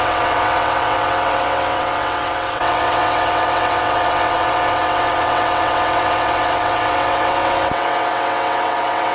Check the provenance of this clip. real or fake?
fake